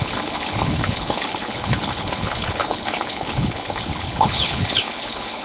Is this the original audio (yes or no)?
no